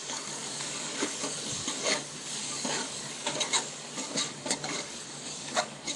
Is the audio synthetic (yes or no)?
yes